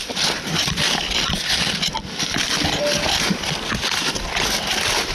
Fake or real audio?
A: real